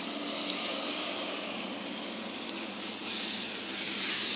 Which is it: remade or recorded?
recorded